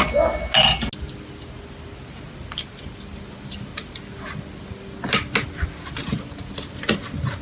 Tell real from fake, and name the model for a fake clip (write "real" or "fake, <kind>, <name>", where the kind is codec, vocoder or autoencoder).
real